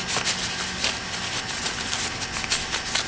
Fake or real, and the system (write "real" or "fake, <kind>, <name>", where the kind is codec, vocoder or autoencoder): real